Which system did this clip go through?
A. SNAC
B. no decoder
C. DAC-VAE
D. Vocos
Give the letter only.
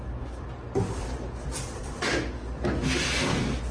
B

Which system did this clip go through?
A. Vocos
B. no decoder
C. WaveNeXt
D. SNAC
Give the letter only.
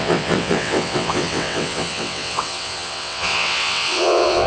C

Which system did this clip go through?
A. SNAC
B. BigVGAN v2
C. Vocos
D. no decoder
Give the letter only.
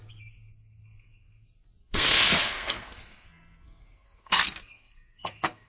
A